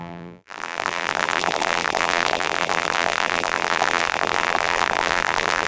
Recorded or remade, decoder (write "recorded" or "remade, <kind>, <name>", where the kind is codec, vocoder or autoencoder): remade, vocoder, BigVGAN v2